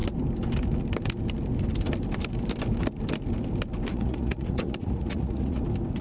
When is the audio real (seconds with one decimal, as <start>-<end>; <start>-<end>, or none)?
0.0-3.9; 5.6-6.0